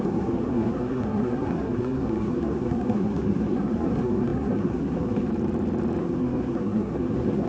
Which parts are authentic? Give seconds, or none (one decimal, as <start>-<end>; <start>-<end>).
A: 5.3-6.0